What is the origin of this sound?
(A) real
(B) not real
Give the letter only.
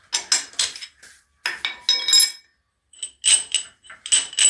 A